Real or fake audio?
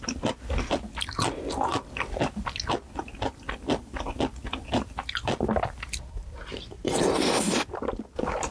real